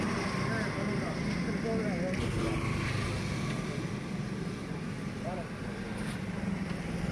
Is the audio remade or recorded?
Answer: recorded